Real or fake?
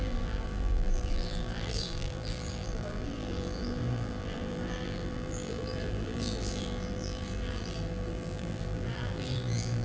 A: fake